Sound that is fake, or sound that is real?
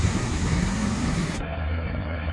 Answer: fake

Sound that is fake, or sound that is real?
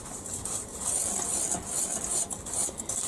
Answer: real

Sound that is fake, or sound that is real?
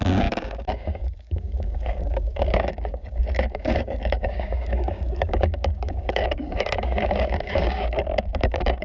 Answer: fake